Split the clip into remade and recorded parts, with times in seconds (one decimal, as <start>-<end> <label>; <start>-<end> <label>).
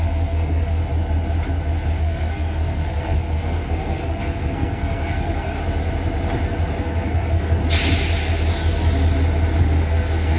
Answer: 0.0-0.8 remade; 0.8-2.0 recorded; 2.0-5.6 remade; 5.6-6.8 recorded; 6.8-7.6 remade; 7.6-9.6 recorded; 9.6-10.4 remade